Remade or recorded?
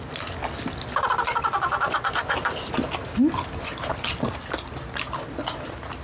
recorded